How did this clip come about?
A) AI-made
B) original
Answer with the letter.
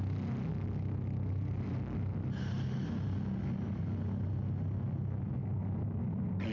B